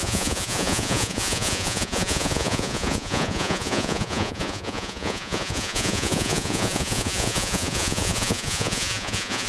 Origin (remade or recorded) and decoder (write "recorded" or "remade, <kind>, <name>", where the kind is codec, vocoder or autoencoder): remade, vocoder, Vocos